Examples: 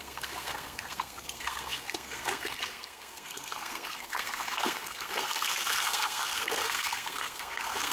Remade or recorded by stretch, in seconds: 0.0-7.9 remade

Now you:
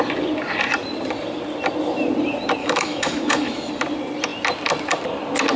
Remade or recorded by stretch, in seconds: 0.0-2.6 recorded; 2.6-3.7 remade; 3.7-5.6 recorded

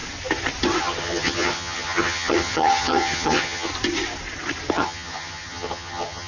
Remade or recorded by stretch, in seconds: 0.0-0.8 recorded; 0.8-3.7 remade; 3.7-4.7 recorded; 4.7-6.3 remade

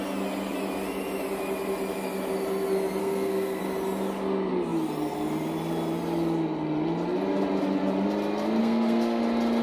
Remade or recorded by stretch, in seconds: 0.0-3.0 recorded; 3.0-3.6 remade; 3.6-8.6 recorded; 8.6-9.2 remade; 9.2-9.6 recorded

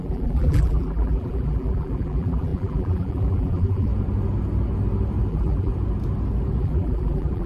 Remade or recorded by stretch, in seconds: 0.0-3.9 remade; 3.9-5.3 recorded; 5.3-5.7 remade; 5.7-6.6 recorded; 6.6-7.5 remade

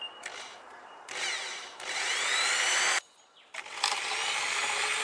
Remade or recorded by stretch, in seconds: 0.0-0.5 recorded; 0.5-2.9 remade; 2.9-5.0 recorded

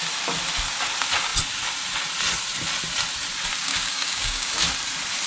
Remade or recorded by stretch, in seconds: 0.0-3.7 recorded; 3.7-4.5 remade; 4.5-5.3 recorded